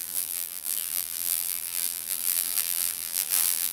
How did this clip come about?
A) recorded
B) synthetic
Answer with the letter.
B